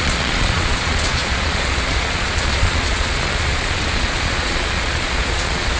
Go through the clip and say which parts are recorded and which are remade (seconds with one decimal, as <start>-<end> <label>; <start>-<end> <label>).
0.0-5.8 remade